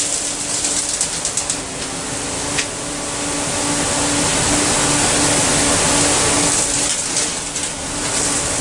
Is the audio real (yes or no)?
yes